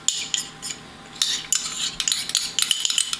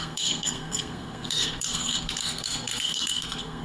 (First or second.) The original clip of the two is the first